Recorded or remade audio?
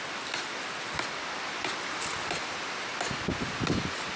recorded